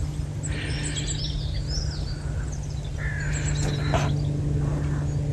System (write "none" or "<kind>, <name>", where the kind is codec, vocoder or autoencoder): none